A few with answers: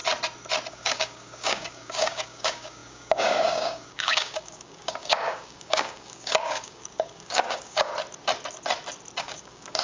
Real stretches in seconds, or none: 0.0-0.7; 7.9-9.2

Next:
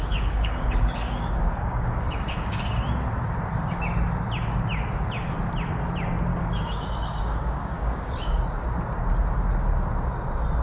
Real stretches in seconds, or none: 2.7-6.3; 8.4-10.6